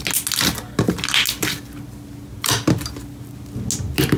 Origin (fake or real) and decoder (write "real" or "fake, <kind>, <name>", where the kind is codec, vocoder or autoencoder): real